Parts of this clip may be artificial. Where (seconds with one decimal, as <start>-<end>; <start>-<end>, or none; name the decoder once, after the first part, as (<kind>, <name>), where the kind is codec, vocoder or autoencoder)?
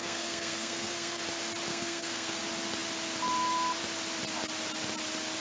0.0-1.2 (codec, SNAC); 1.7-2.4